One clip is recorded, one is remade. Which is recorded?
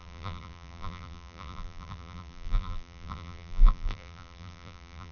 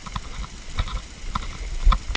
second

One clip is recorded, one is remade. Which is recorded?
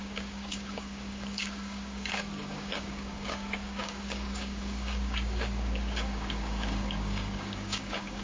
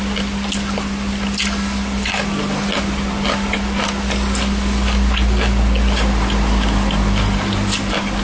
second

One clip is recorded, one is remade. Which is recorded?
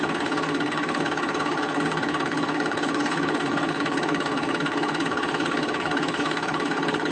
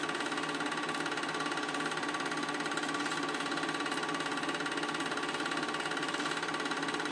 second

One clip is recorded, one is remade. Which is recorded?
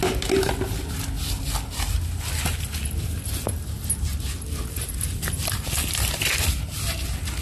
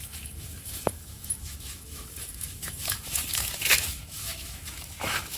first